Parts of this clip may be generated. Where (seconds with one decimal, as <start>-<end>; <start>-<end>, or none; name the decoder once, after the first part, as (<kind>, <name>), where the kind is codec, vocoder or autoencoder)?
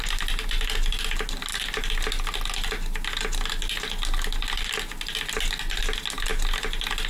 none